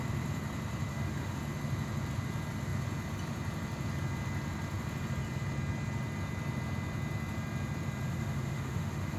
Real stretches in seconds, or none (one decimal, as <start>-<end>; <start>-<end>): 0.0-0.9; 1.4-8.1